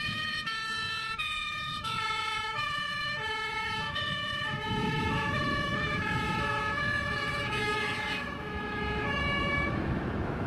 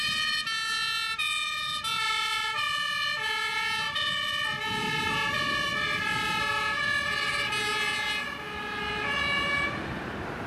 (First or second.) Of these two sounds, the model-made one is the first